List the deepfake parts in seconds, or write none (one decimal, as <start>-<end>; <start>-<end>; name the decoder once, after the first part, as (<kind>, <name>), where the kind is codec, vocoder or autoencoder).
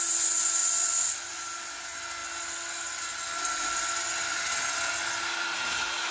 none